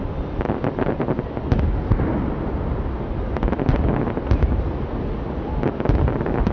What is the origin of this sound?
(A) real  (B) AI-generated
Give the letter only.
A